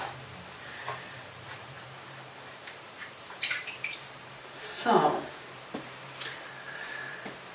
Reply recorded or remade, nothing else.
remade